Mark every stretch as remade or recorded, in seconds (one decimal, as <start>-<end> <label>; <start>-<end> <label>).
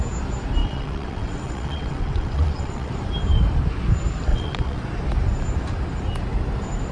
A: 0.0-0.6 recorded; 0.6-2.9 remade; 2.9-4.3 recorded; 4.3-4.8 remade; 4.8-6.9 recorded